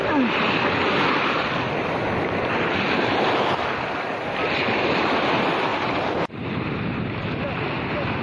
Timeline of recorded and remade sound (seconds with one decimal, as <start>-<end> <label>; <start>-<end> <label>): 0.0-5.7 recorded; 5.7-7.1 remade; 7.1-8.2 recorded

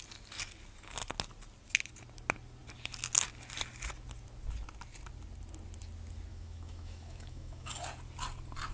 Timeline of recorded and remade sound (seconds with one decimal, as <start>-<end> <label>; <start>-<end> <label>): 0.0-6.3 recorded; 6.3-7.7 remade; 7.7-8.7 recorded

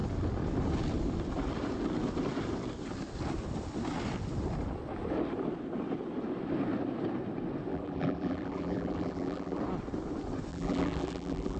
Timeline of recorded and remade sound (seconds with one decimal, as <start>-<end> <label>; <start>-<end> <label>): 0.0-7.7 recorded; 7.7-9.6 remade; 9.6-10.5 recorded; 10.5-11.6 remade

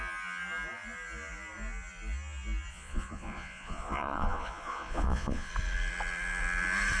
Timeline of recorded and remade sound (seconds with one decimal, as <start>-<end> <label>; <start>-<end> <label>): 0.0-2.7 recorded; 2.7-5.5 remade; 5.5-7.0 recorded

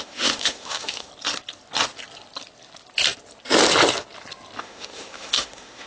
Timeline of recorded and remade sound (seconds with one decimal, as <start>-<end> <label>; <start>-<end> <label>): 0.0-1.1 remade; 1.1-4.6 recorded; 4.6-5.9 remade

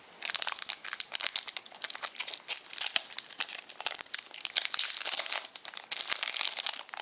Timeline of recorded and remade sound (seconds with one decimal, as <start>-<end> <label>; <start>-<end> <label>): 0.0-7.0 recorded